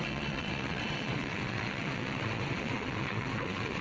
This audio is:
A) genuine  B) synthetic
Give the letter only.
B